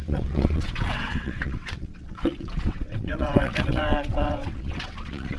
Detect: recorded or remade remade